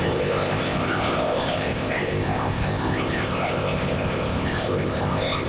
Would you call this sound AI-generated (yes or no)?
yes